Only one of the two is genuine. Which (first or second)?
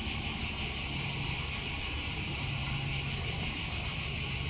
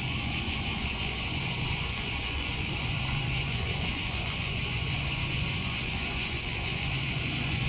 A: first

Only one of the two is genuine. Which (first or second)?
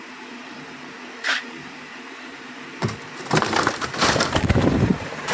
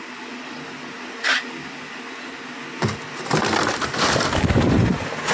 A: second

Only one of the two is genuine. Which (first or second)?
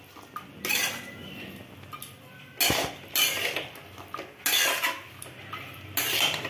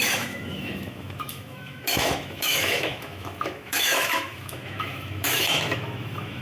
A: first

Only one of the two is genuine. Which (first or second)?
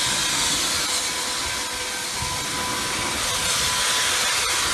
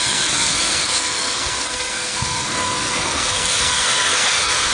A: first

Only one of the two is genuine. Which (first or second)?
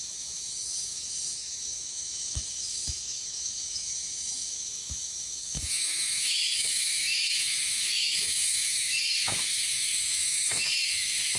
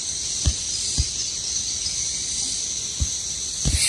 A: second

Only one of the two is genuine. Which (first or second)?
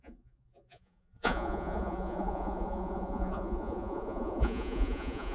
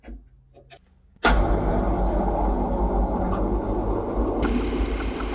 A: second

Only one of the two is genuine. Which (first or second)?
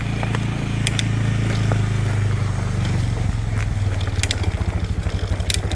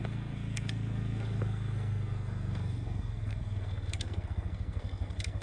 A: first